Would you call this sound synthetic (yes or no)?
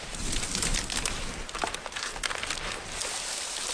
no